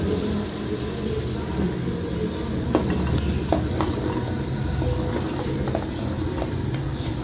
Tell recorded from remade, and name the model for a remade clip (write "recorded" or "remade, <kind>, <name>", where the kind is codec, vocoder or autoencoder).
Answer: recorded